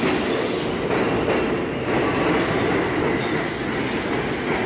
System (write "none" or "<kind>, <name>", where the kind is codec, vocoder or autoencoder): none